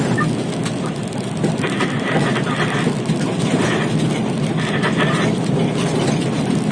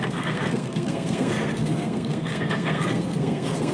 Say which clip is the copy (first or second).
second